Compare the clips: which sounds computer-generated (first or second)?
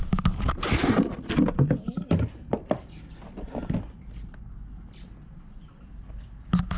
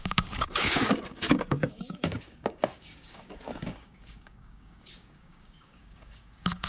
second